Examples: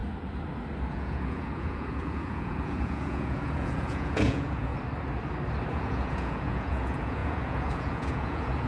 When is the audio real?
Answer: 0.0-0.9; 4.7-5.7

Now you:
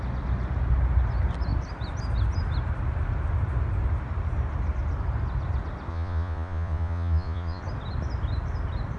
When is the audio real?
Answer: 0.0-5.9; 7.6-9.0